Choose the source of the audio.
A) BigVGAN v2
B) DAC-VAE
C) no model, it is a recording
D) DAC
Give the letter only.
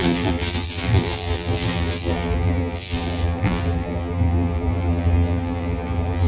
A